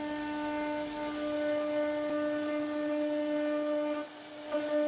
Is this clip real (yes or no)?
yes